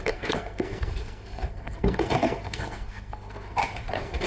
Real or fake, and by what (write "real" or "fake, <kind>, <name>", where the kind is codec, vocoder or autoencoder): fake, codec, SNAC